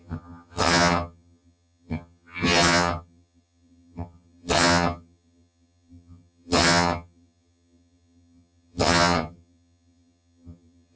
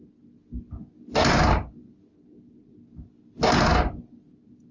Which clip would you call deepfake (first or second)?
first